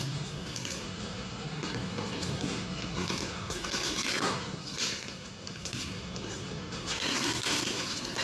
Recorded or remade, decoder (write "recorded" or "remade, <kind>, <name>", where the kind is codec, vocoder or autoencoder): remade, codec, SNAC